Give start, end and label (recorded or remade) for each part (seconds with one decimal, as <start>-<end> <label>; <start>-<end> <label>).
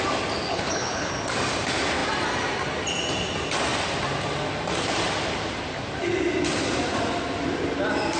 0.0-0.5 recorded; 0.5-1.1 remade; 1.1-8.2 recorded